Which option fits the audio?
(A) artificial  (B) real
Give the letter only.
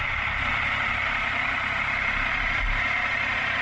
A